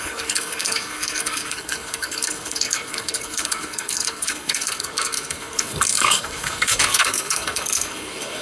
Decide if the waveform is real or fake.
fake